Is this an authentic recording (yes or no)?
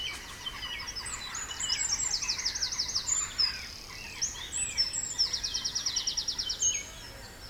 yes